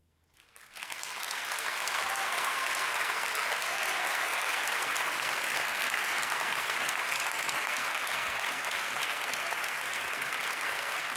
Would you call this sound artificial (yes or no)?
yes